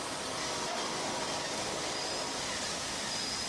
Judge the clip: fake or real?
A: real